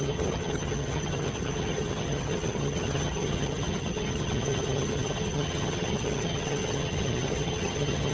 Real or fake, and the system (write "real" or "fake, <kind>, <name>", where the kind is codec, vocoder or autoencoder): fake, vocoder, HiFi-GAN